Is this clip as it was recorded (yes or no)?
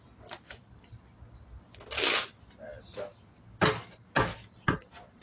yes